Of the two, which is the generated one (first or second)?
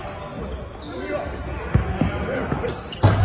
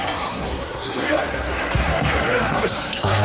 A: second